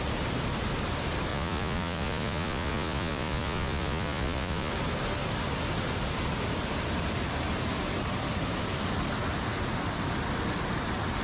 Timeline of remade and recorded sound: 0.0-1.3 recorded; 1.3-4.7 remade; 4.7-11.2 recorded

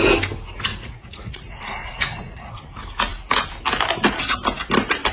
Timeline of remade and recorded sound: 0.0-0.7 recorded; 0.7-2.5 remade; 2.5-5.1 recorded

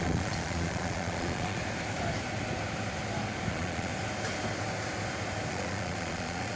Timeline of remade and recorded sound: 0.0-1.6 remade; 1.6-3.5 recorded; 3.5-3.9 remade; 3.9-5.5 recorded; 5.5-6.6 remade

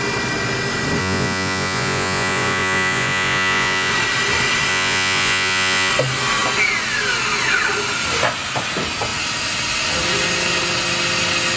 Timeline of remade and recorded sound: 0.0-1.0 recorded; 1.0-3.9 remade; 3.9-4.7 recorded; 4.7-5.9 remade; 5.9-11.6 recorded

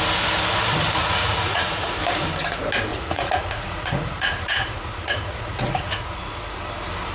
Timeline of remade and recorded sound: 0.0-1.0 recorded; 1.0-1.9 remade; 1.9-2.9 recorded; 2.9-6.6 remade; 6.6-7.1 recorded

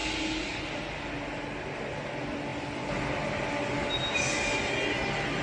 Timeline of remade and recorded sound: 0.0-5.4 recorded